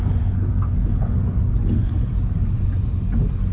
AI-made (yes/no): no